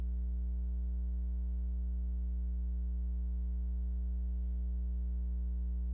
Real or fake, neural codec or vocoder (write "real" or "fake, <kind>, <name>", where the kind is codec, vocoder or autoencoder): real